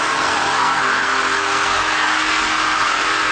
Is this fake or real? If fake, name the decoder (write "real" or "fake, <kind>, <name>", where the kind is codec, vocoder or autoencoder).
fake, codec, SNAC